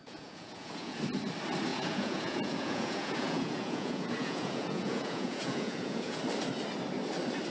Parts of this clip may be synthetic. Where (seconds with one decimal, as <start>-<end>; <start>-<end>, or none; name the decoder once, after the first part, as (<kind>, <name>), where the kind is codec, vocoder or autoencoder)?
0.0-1.0 (vocoder, Vocos); 1.7-6.2